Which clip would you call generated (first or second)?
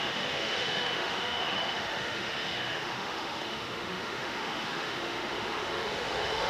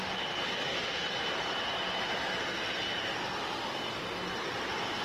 first